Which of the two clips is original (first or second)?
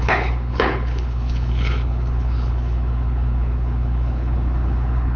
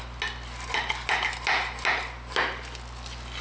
second